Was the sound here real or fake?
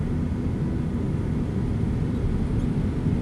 real